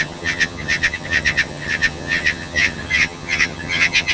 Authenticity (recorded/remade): remade